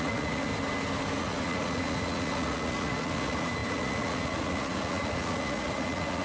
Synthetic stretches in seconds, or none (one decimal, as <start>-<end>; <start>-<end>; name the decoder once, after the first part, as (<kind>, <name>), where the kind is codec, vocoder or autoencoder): 0.0-0.5 (vocoder, Vocos); 1.2-6.2